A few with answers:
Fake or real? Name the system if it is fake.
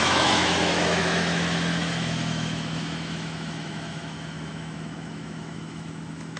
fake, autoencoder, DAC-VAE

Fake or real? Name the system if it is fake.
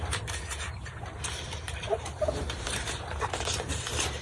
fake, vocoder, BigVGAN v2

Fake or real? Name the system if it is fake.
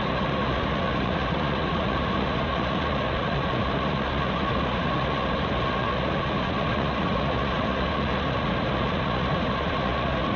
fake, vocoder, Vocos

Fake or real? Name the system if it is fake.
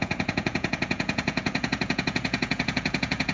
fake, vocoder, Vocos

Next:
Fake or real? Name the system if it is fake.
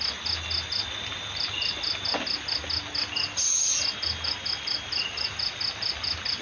real